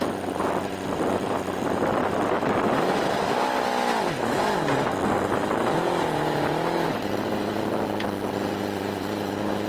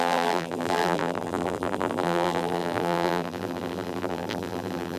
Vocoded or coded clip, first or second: second